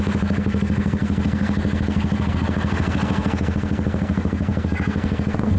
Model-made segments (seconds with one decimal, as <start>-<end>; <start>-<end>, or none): 0.0-5.6